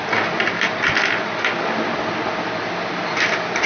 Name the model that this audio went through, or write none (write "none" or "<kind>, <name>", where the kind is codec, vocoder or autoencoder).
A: none